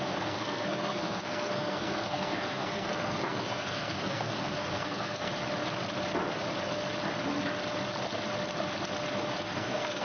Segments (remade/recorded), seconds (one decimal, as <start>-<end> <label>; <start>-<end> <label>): 0.0-5.3 remade; 5.3-9.4 recorded; 9.4-10.0 remade